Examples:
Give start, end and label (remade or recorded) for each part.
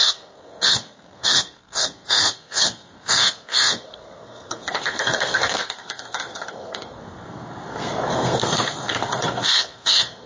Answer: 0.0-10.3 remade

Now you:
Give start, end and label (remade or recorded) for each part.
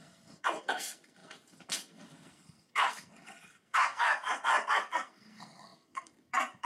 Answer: 0.0-6.7 remade